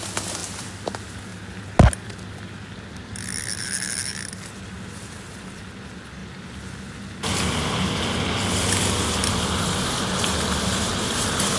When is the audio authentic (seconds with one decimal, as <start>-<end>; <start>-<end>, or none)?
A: 0.0-11.6